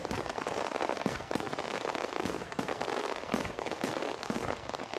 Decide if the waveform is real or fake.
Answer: fake